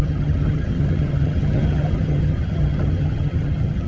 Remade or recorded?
remade